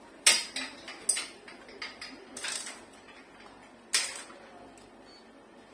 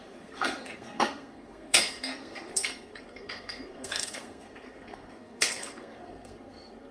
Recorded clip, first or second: first